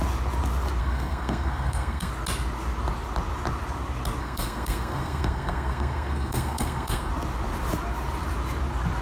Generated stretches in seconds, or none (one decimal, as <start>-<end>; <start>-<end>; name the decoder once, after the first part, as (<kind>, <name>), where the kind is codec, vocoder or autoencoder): 0.8-2.1 (codec, SNAC); 4.2-7.1